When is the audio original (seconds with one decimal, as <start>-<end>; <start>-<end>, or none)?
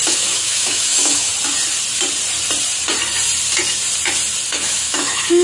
1.3-4.5